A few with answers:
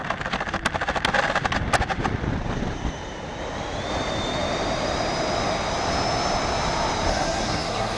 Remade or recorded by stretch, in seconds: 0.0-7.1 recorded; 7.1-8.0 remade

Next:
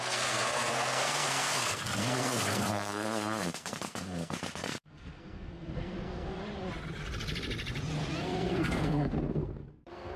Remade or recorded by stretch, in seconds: 0.0-6.4 remade; 6.4-8.2 recorded; 8.2-10.2 remade

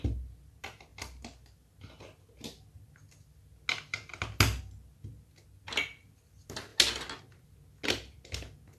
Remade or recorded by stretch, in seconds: 0.0-8.8 recorded

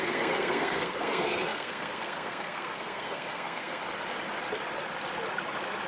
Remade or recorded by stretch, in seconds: 0.0-3.8 remade; 3.8-5.9 recorded

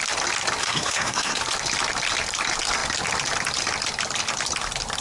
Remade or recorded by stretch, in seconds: 0.0-0.6 recorded; 0.6-1.4 remade; 1.4-5.0 recorded